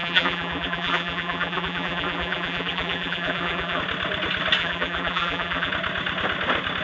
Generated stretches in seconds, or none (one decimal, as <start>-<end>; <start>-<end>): 0.0-3.8; 4.6-5.7